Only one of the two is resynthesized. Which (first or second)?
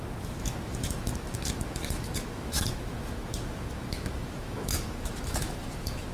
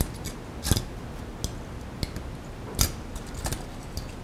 first